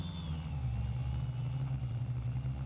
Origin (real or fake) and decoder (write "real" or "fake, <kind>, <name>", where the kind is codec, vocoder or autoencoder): real